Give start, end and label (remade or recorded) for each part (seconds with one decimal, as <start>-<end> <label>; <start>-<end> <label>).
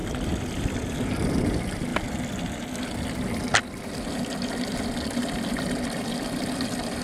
0.0-1.4 recorded; 1.4-1.9 remade; 1.9-3.8 recorded; 3.8-7.0 remade